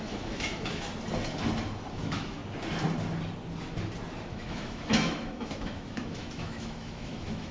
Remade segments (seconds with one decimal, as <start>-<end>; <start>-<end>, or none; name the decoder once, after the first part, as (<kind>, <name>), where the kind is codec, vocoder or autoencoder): 0.0-0.9 (autoencoder, DAC-VAE); 1.9-2.4; 4.3-7.5